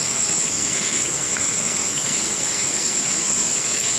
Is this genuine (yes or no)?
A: no